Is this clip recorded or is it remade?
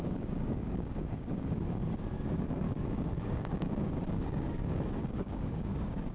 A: remade